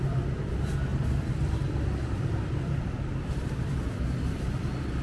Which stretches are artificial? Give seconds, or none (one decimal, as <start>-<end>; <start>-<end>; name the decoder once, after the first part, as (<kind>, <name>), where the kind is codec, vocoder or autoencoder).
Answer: 0.0-5.0 (vocoder, BigVGAN v2)